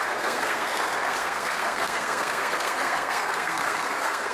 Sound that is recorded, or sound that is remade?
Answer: remade